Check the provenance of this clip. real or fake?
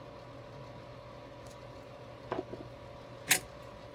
real